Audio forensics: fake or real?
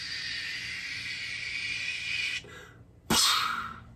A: real